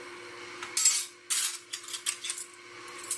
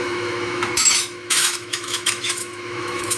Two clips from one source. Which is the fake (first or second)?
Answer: second